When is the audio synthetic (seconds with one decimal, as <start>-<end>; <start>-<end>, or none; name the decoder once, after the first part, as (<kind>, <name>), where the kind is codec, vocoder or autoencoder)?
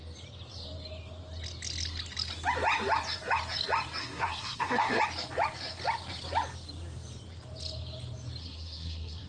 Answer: 4.0-5.0 (codec, SNAC); 8.4-9.3